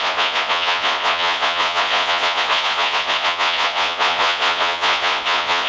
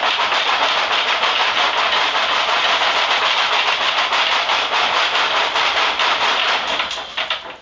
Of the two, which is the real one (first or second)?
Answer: second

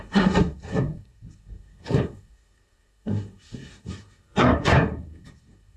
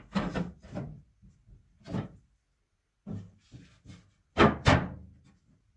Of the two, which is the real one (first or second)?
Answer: second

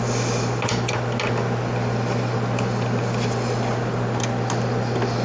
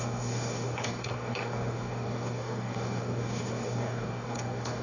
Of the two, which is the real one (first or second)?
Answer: first